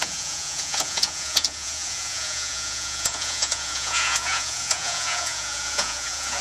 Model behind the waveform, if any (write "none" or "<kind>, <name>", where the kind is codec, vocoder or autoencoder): vocoder, Vocos